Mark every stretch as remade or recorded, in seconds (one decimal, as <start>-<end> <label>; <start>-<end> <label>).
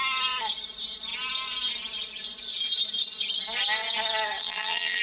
0.0-4.4 recorded; 4.4-5.0 remade